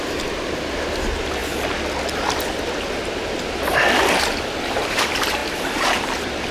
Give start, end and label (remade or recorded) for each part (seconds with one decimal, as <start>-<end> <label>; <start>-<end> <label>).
0.0-6.5 recorded

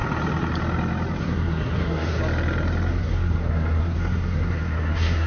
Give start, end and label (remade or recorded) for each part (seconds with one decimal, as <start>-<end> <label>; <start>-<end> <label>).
0.0-1.2 recorded; 1.2-2.2 remade; 2.2-2.9 recorded; 2.9-5.3 remade